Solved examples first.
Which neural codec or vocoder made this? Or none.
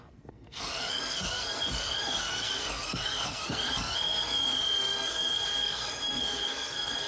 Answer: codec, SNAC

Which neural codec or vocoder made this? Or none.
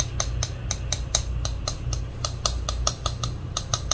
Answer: none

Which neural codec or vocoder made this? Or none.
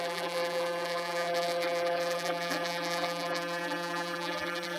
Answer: vocoder, BigVGAN v2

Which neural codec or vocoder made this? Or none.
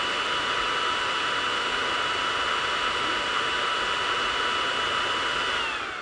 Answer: none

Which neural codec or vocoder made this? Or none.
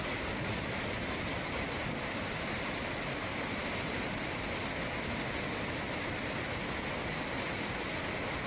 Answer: none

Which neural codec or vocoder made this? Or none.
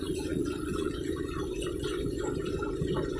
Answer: vocoder, Vocos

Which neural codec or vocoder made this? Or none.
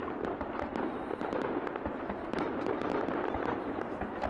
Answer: none